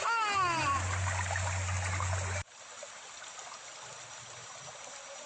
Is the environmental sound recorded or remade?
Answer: recorded